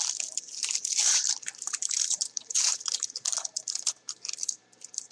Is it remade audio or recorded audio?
remade